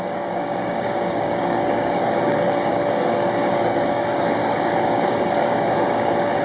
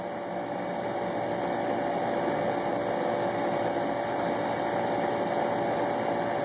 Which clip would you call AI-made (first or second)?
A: first